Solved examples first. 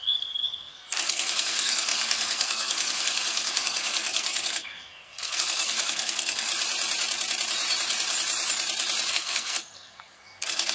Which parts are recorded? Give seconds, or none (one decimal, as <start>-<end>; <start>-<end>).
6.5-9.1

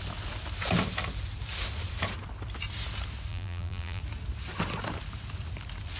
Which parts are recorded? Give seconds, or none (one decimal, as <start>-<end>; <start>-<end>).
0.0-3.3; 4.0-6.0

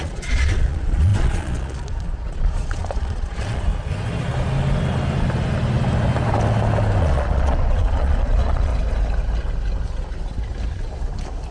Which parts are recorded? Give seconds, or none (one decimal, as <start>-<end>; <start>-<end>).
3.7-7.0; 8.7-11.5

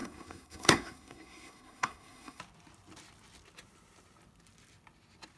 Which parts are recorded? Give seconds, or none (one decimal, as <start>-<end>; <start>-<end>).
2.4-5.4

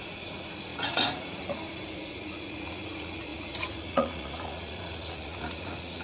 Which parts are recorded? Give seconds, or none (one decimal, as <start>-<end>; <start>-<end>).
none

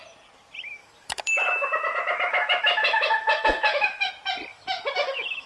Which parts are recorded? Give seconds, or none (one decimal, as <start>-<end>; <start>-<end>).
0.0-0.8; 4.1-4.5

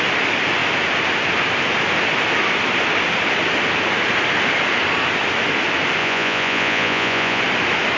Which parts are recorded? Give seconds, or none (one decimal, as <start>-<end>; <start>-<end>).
0.0-6.0; 7.4-8.0